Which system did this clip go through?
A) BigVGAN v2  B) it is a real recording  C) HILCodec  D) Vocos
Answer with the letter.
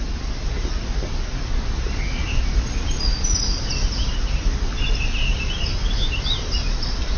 B